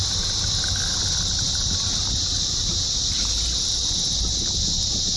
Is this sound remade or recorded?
recorded